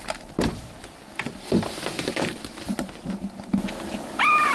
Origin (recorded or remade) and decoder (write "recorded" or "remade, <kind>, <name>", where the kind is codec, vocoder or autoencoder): recorded